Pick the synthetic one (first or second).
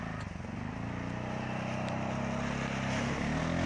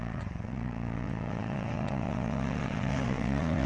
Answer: second